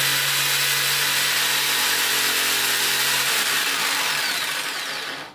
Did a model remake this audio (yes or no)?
no